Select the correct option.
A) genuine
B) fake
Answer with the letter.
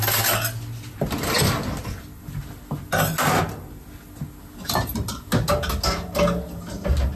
A